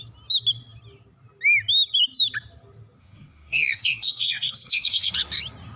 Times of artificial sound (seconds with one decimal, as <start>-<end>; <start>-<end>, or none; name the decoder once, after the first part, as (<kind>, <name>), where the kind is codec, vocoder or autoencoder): 3.0-5.1 (codec, SNAC)